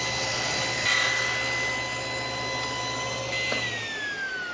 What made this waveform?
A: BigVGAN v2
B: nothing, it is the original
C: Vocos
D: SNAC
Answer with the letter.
B